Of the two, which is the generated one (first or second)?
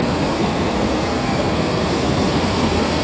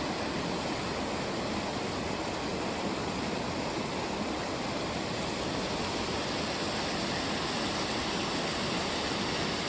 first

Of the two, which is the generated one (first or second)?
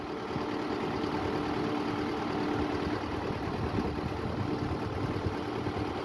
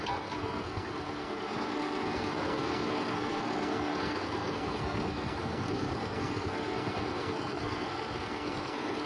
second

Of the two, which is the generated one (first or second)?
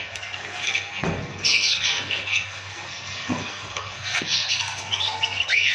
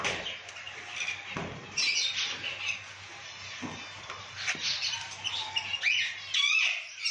first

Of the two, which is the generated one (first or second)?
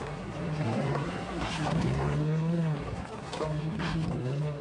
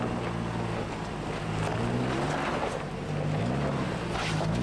first